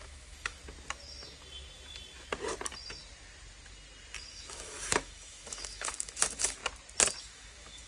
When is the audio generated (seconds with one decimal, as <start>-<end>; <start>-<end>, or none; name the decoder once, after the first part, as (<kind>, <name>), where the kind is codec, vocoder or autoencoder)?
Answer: 0.0-0.6 (autoencoder, DAC-VAE); 4.3-6.6; 7.2-7.9